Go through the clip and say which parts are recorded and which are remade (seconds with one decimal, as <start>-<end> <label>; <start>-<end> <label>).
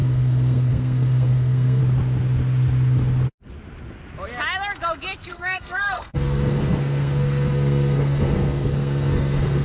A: 0.0-1.8 remade; 1.8-5.3 recorded; 5.3-9.6 remade